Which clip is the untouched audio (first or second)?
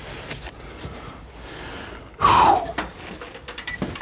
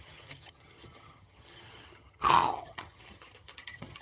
first